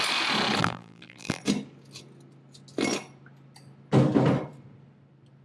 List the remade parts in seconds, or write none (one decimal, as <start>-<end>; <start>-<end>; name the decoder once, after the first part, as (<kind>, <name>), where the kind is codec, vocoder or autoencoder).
0.6-1.4 (vocoder, BigVGAN v2)